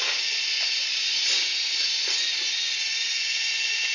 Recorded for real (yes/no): yes